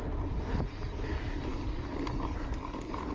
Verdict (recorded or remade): recorded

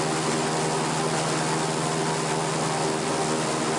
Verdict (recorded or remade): recorded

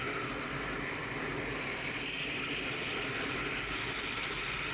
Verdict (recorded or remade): recorded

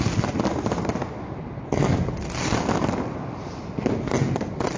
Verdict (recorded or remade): recorded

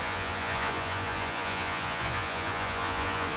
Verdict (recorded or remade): remade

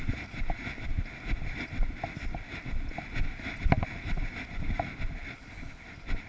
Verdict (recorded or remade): recorded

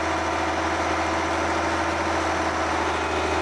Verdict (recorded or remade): recorded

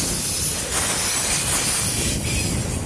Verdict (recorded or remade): recorded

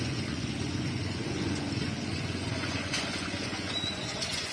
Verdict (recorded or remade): remade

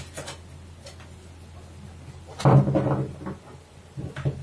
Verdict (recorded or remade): recorded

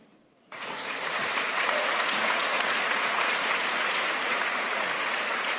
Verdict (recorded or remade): remade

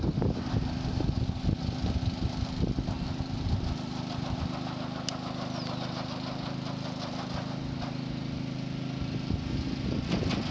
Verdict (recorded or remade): recorded